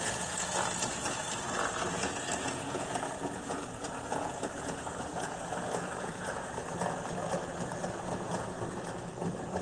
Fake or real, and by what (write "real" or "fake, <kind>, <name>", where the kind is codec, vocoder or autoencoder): fake, vocoder, Vocos